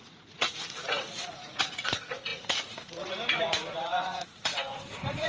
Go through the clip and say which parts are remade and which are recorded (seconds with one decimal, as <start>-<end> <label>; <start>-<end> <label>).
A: 0.0-5.3 remade